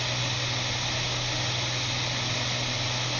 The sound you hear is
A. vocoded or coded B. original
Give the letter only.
B